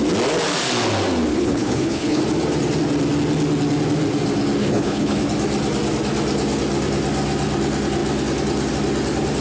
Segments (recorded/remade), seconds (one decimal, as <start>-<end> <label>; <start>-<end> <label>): 0.0-1.3 recorded; 1.3-2.2 remade; 2.2-4.6 recorded; 4.6-5.2 remade; 5.2-9.4 recorded